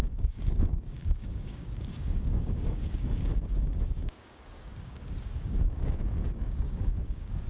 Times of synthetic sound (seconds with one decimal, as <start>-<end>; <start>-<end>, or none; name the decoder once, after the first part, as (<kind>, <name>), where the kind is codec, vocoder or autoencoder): 0.0-7.5 (codec, DAC)